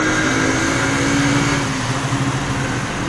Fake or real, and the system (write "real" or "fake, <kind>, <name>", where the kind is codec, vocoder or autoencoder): real